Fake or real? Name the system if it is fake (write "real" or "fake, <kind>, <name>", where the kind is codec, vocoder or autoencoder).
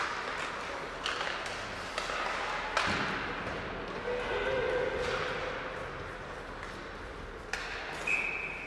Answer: real